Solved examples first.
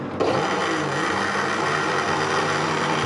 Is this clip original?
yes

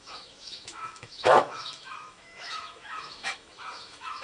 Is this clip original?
no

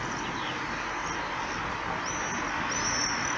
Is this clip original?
yes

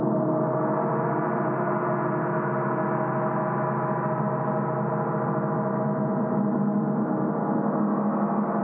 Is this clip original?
yes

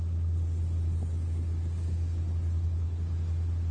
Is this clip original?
yes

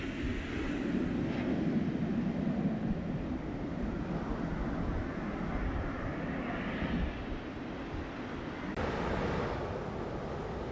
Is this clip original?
yes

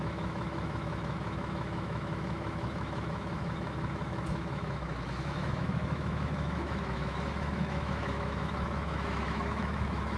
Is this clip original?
no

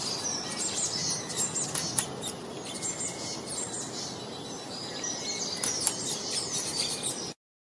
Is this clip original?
yes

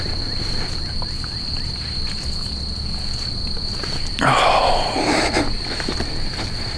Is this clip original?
yes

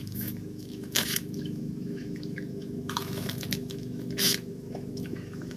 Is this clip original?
no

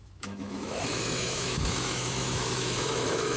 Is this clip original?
no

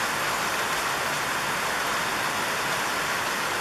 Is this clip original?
yes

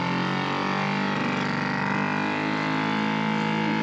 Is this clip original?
yes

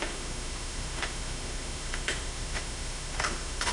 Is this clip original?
no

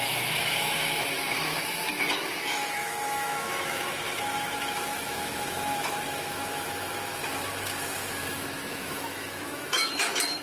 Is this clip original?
no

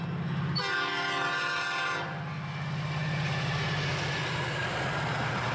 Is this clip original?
yes